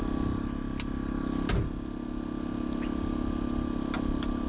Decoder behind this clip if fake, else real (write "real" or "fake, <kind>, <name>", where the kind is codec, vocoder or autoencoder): real